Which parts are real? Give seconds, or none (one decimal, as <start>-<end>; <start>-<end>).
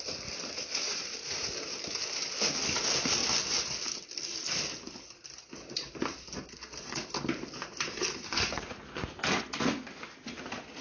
0.0-10.8